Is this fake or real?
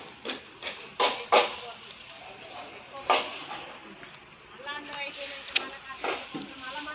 real